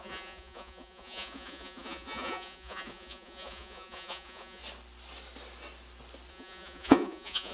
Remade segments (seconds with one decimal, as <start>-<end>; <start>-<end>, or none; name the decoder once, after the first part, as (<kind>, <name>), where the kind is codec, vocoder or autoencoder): 0.0-4.6 (vocoder, Vocos); 6.3-7.5

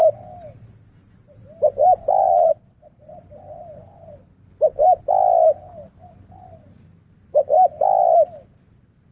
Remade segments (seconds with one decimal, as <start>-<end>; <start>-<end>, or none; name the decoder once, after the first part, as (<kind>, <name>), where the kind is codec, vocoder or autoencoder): 2.2-3.1 (vocoder, Vocos)

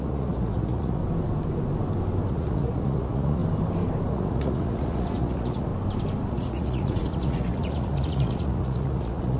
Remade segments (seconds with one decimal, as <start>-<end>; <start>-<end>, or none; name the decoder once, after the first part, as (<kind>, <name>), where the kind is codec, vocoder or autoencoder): 0.0-1.0 (vocoder, Vocos); 2.3-3.4; 4.1-5.7; 6.3-9.4